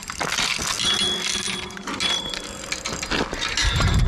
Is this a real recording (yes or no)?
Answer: yes